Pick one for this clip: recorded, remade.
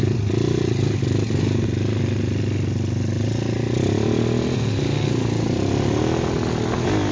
recorded